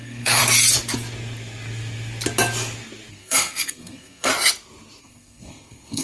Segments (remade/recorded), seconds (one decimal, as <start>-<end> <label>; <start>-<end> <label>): 0.0-0.4 remade; 0.4-3.1 recorded; 3.1-4.3 remade; 4.3-5.0 recorded; 5.0-6.0 remade